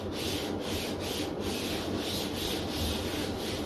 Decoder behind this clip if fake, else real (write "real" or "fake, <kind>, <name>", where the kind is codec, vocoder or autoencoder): real